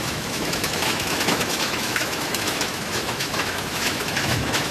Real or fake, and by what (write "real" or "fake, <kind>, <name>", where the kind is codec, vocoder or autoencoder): fake, autoencoder, DAC-VAE